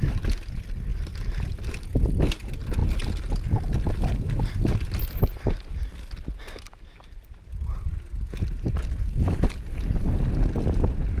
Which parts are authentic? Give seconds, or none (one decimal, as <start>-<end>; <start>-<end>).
0.0-11.2